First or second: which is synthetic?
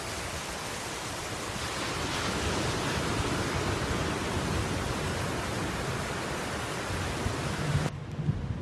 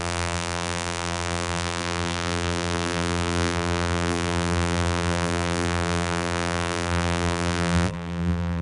second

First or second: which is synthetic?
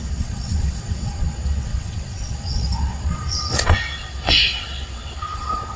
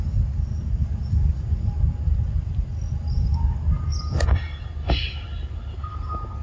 first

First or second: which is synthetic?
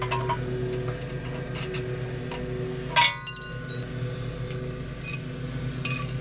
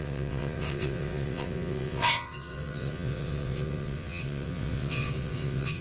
second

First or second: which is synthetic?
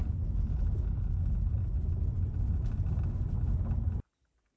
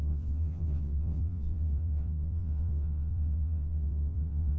second